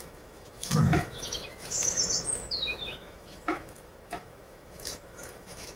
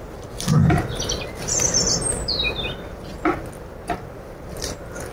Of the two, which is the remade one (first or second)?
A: first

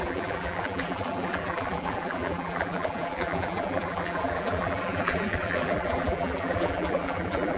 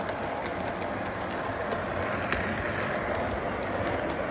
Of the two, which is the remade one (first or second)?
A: first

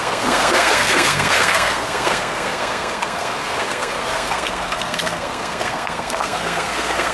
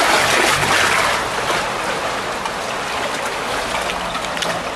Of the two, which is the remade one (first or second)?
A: first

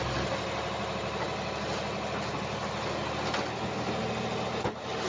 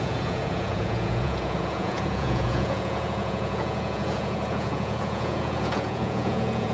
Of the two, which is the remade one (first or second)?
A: second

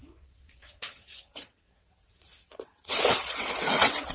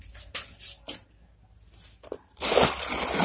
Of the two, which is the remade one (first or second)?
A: first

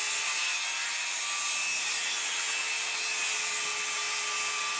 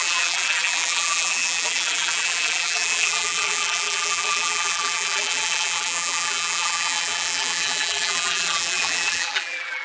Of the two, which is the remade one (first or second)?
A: second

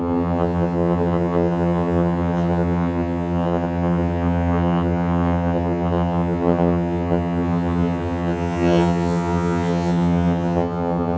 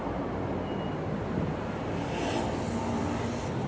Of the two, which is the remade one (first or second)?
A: first